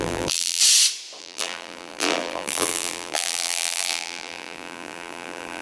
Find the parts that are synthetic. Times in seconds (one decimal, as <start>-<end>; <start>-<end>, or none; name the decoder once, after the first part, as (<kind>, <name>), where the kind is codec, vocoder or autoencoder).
0.0-0.6 (vocoder, BigVGAN v2); 1.2-5.6